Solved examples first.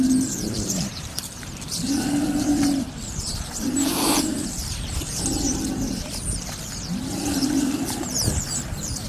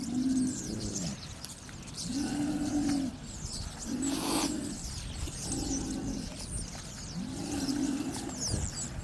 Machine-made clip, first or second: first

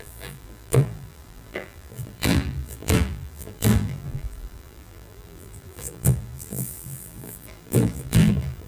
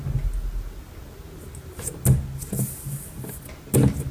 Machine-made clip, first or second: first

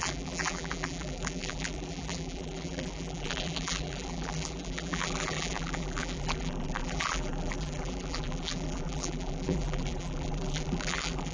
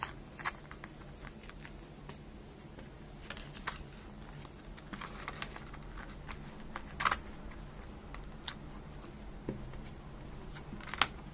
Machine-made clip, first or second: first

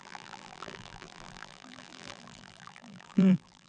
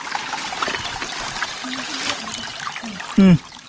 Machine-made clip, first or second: first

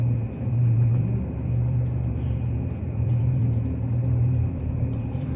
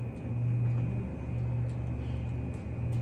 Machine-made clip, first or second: first